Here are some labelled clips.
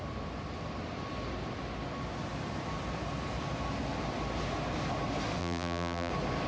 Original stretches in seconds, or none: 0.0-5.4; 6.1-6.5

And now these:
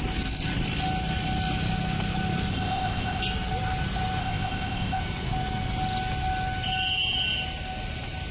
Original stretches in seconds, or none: 0.0-2.5; 3.2-4.2; 5.0-8.3

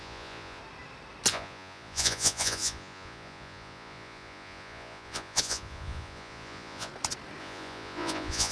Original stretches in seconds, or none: 0.6-1.3; 6.9-7.4

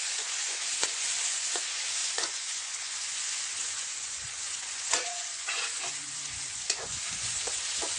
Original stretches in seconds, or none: none